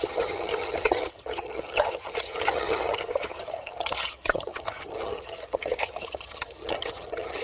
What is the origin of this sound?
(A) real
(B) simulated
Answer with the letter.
B